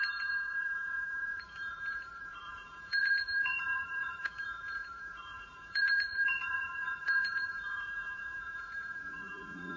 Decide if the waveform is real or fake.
fake